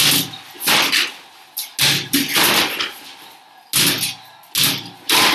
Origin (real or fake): real